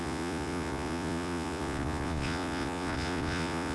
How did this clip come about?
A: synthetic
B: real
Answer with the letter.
A